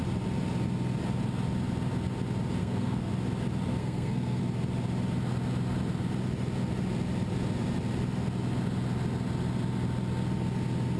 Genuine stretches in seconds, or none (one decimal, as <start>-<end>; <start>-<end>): 0.0-2.6; 3.1-3.8; 4.4-11.0